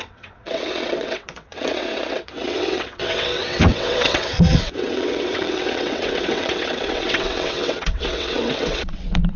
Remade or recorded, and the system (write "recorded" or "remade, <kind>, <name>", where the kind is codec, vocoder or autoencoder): remade, vocoder, WaveNeXt